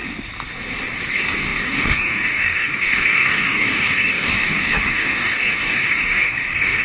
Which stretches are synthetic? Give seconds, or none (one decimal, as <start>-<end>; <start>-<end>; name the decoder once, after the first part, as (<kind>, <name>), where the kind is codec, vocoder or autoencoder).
1.1-6.8 (codec, DAC)